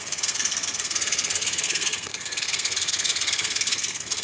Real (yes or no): no